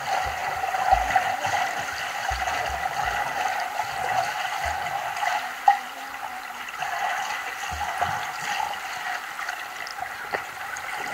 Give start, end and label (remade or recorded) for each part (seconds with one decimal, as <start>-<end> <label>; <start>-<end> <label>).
0.0-9.9 recorded; 9.9-10.5 remade; 10.5-11.1 recorded